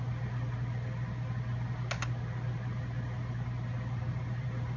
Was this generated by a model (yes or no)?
no